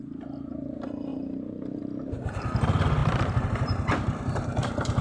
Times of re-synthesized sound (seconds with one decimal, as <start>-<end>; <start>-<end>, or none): 3.0-5.0

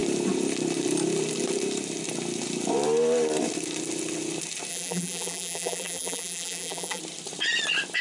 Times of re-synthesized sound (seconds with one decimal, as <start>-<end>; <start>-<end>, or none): 4.7-7.0

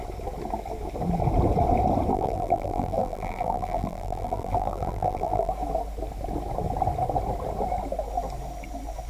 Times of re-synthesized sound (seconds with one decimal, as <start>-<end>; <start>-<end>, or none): 2.1-5.5

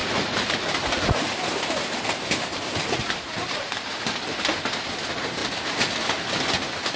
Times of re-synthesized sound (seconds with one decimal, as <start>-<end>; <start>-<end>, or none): 0.0-4.2; 5.4-6.2

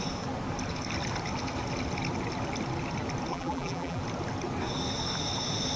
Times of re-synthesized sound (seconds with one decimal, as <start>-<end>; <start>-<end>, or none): 3.3-4.0

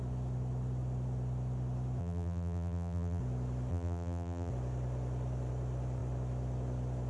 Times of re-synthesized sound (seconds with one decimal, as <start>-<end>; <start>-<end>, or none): 2.0-3.2; 3.7-4.5

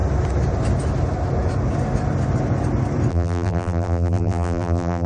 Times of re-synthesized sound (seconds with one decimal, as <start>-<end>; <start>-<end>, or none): 3.1-5.1

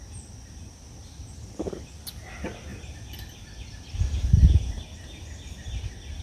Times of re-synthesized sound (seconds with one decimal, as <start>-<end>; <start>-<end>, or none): none